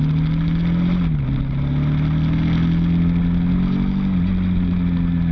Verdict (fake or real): real